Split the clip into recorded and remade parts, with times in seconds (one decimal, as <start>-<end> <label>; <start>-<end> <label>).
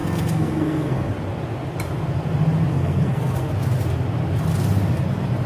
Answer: 0.0-1.1 remade; 1.1-2.7 recorded; 2.7-3.5 remade; 3.5-5.5 recorded